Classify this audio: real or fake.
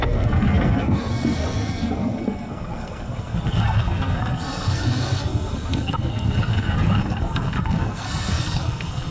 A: fake